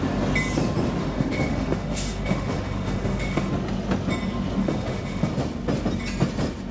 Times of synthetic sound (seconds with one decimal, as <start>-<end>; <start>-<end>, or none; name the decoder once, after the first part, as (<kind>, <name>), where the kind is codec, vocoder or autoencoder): 1.0-3.5 (autoencoder, DAC-VAE); 4.6-5.3